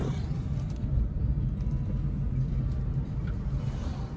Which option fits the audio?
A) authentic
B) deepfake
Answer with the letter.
A